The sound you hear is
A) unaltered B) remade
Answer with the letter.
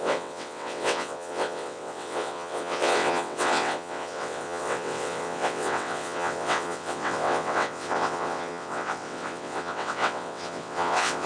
B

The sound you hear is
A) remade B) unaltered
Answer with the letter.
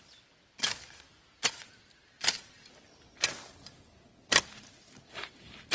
B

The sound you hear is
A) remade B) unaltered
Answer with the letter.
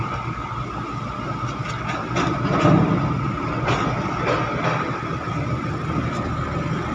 B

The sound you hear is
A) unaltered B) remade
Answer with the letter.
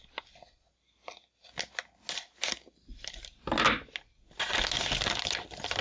A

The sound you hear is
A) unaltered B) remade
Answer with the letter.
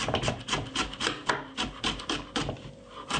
A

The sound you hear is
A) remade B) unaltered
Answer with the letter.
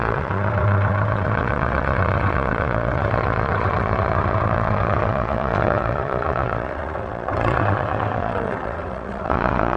A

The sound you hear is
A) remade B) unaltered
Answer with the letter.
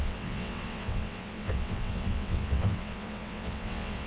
A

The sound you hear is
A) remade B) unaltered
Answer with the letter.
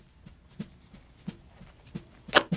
B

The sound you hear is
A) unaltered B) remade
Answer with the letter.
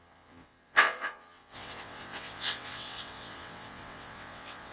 B